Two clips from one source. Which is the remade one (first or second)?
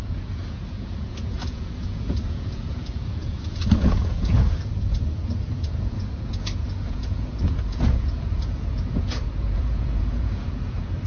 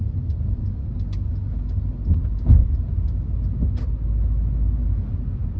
first